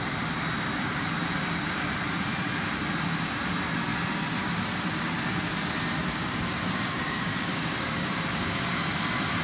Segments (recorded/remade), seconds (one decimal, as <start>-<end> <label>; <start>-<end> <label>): 0.0-6.0 recorded; 6.0-9.0 remade; 9.0-9.4 recorded